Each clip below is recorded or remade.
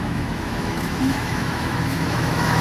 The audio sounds remade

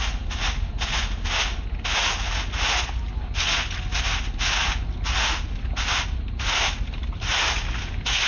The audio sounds recorded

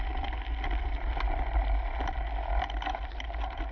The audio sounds recorded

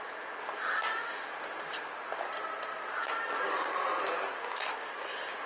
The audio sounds recorded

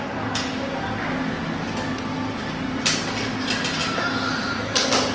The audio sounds recorded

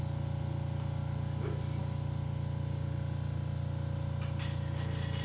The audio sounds recorded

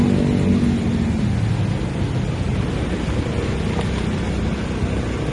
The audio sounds recorded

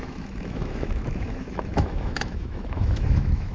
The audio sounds remade